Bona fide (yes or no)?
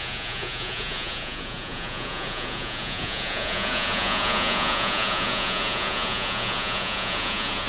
no